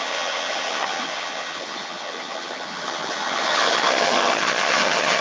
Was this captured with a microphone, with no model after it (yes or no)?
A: no